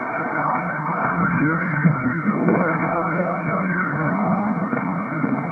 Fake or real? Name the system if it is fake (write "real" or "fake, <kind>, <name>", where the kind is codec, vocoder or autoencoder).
fake, codec, SNAC